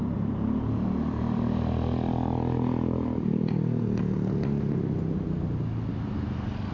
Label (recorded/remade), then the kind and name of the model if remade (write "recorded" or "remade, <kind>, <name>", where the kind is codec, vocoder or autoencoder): recorded